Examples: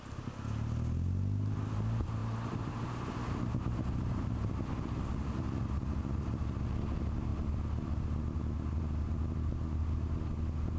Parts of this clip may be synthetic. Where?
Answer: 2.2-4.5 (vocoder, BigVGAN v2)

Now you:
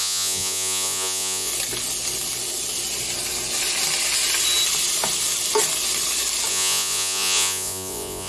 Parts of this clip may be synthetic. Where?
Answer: 0.0-1.5 (vocoder, Vocos); 6.5-8.3

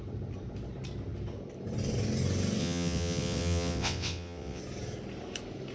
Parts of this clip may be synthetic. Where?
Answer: 2.6-4.6 (vocoder, WaveNeXt)

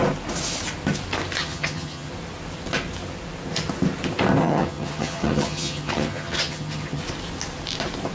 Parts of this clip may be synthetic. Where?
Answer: 1.4-2.1 (vocoder, HiFi-GAN); 4.4-7.0

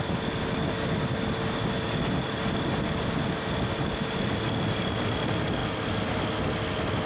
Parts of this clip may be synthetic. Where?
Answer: none

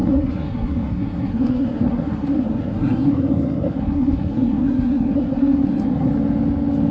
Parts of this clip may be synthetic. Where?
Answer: 0.0-6.1 (codec, SNAC)

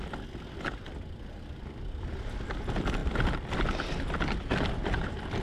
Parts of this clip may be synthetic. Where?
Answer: none